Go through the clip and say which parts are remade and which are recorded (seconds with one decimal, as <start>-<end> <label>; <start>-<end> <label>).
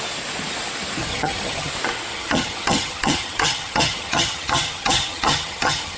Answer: 0.0-1.0 recorded; 1.0-1.7 remade; 1.7-2.1 recorded; 2.1-6.0 remade